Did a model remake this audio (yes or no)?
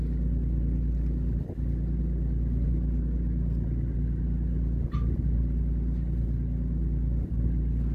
no